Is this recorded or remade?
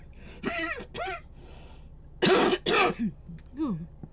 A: recorded